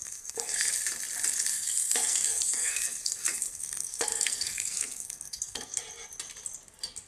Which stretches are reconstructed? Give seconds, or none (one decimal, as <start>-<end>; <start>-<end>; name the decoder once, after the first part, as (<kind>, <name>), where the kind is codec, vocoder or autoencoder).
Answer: 0.0-0.7 (codec, SNAC); 1.5-5.8

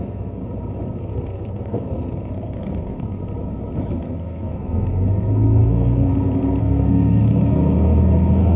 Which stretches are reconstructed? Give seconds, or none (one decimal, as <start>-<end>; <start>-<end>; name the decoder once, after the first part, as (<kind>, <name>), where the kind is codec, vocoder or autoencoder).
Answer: 0.0-0.4 (codec, SNAC); 1.0-3.2; 3.9-6.1; 6.6-8.6

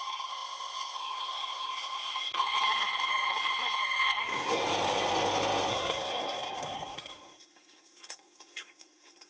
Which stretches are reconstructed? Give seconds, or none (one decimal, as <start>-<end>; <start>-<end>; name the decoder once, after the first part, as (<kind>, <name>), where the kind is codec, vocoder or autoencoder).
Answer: 0.0-4.6 (codec, SNAC); 5.7-9.3